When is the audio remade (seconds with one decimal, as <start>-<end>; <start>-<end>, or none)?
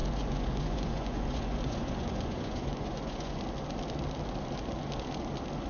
0.0-3.4